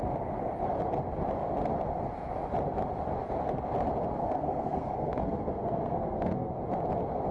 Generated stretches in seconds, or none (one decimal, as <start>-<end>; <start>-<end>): 4.2-6.5